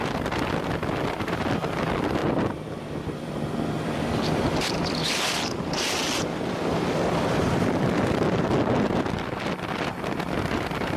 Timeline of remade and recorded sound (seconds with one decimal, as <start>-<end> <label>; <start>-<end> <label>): 0.0-2.2 remade; 2.2-2.7 recorded; 2.7-11.0 remade